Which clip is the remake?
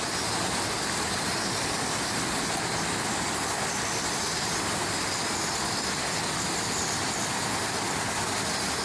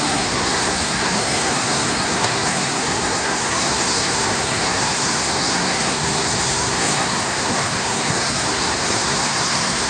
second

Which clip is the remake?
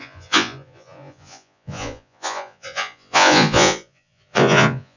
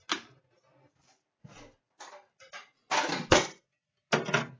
first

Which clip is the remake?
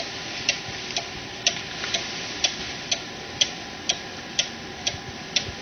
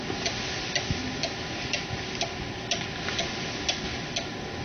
first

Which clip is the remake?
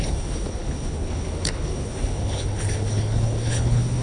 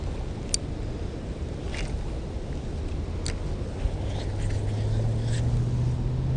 first